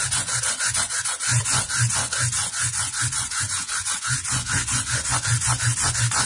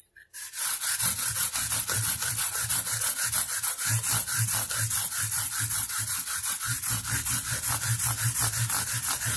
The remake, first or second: first